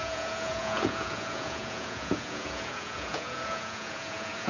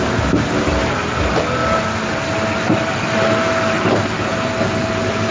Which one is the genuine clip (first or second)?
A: second